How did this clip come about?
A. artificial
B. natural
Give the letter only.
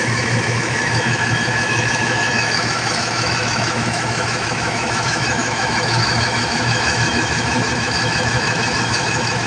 A